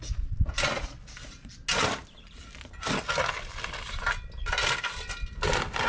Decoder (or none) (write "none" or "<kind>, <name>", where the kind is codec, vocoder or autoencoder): none